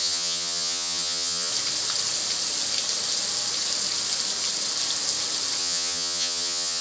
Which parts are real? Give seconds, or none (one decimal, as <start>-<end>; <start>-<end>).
1.5-5.6